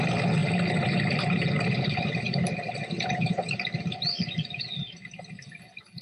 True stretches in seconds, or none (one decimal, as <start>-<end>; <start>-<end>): 0.0-6.0